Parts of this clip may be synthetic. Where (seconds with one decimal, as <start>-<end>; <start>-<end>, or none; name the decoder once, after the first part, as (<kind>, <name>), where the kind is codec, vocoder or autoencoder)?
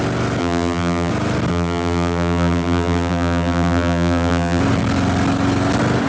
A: 0.4-1.1 (vocoder, BigVGAN v2); 1.5-4.6